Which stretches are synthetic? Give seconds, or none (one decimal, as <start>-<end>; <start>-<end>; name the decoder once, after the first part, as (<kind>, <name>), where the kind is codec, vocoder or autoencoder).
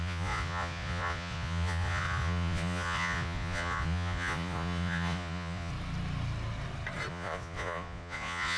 0.0-5.7 (vocoder, Vocos); 7.1-8.6